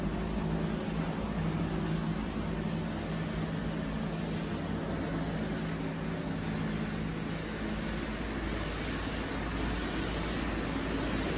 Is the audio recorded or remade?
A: recorded